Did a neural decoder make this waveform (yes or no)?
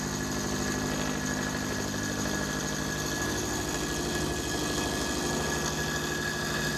no